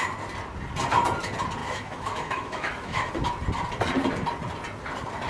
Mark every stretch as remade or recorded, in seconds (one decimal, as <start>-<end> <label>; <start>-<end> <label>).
0.0-1.6 recorded; 1.6-3.1 remade; 3.1-5.3 recorded